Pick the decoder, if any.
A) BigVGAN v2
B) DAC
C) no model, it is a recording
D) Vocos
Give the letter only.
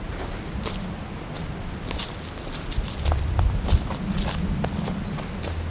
C